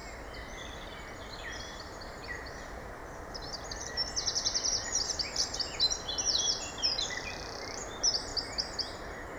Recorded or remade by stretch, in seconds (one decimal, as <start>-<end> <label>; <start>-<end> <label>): 0.0-1.6 recorded; 1.6-3.0 remade; 3.0-7.0 recorded; 7.0-8.3 remade; 8.3-9.4 recorded